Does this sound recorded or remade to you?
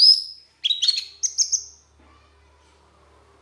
recorded